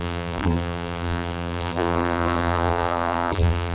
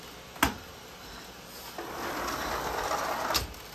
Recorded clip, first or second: second